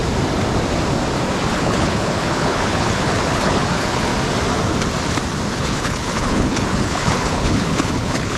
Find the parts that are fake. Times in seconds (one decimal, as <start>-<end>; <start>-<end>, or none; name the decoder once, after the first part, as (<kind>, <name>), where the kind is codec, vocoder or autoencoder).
1.5-4.1 (codec, HILCodec); 5.5-8.4